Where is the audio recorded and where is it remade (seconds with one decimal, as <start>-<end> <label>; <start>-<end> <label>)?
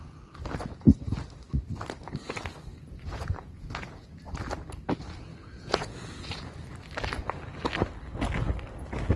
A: 0.0-2.7 recorded; 2.7-4.1 remade; 4.1-5.3 recorded; 5.3-6.3 remade; 6.3-9.2 recorded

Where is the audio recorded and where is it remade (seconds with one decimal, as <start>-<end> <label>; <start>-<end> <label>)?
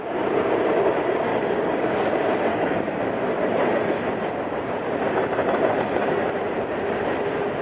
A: 0.0-1.3 recorded; 1.3-2.1 remade; 2.1-2.5 recorded; 2.5-3.0 remade; 3.0-7.6 recorded